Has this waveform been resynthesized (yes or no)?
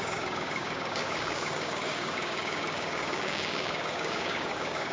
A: yes